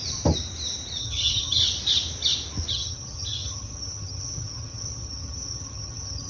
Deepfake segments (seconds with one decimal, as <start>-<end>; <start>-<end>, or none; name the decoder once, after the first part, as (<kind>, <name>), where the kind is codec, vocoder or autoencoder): 1.0-1.6 (vocoder, HiFi-GAN); 2.7-6.3